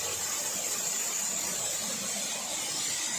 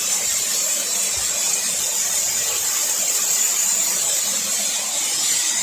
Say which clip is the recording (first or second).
first